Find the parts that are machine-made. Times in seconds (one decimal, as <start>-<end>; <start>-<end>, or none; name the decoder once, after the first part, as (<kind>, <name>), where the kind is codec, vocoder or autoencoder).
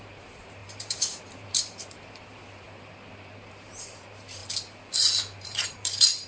0.0-4.4 (vocoder, BigVGAN v2); 5.4-6.3